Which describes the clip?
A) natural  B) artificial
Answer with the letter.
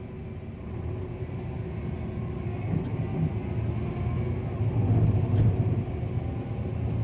A